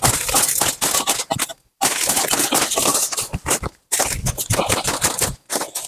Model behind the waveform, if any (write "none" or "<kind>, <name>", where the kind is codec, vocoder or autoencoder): none